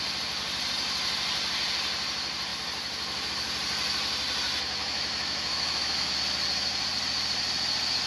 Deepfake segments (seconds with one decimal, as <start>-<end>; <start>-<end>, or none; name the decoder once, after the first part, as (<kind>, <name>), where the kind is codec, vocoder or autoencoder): 4.8-6.1 (autoencoder, DAC-VAE)